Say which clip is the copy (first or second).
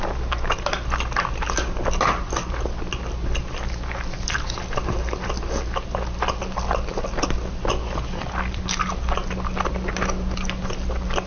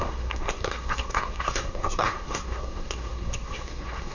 second